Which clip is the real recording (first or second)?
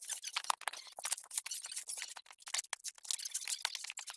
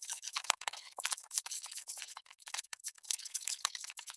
first